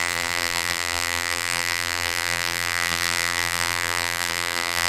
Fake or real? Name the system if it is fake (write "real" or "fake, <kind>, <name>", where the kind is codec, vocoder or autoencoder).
fake, vocoder, BigVGAN v2